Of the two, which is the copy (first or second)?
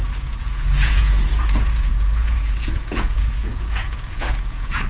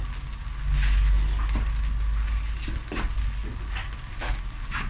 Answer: first